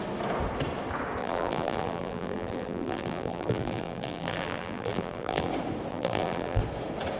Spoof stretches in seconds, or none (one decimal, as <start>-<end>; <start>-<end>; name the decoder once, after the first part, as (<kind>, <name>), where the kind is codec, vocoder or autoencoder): 1.2-5.5 (vocoder, BigVGAN v2); 5.9-6.6